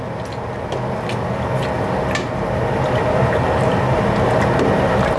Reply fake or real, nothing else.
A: real